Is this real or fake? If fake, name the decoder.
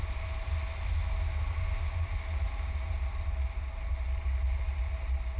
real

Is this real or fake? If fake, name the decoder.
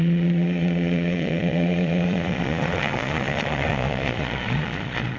fake, vocoder, Vocos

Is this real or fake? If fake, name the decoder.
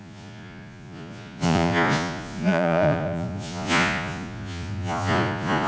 fake, vocoder, Vocos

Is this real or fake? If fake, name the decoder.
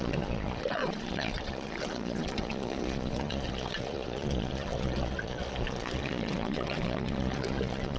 fake, vocoder, Vocos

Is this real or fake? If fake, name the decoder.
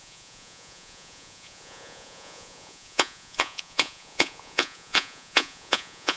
fake, vocoder, Vocos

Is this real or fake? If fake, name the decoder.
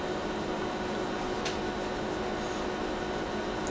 real